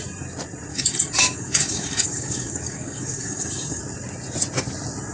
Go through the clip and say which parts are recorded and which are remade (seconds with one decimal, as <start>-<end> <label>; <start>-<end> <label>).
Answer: 0.0-0.7 recorded; 0.7-3.8 remade; 3.8-5.1 recorded

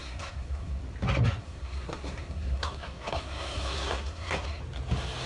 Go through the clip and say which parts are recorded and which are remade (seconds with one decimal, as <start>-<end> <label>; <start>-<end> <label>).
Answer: 0.0-0.8 remade; 0.8-1.4 recorded; 1.4-4.6 remade; 4.6-5.3 recorded

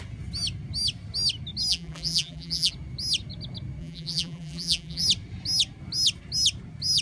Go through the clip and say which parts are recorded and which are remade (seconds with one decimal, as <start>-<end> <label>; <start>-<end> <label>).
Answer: 0.0-1.7 recorded; 1.7-2.7 remade; 2.7-3.8 recorded; 3.8-5.0 remade; 5.0-7.0 recorded

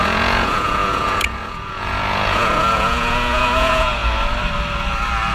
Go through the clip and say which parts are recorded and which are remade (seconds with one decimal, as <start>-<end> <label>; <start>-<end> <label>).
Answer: 0.0-4.0 remade; 4.0-5.3 recorded

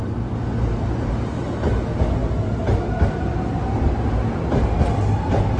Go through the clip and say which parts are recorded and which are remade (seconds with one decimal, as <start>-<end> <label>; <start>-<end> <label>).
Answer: 0.0-5.6 recorded